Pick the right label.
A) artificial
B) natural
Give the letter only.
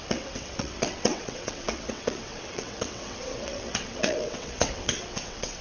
A